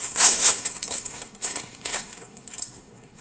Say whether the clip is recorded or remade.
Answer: remade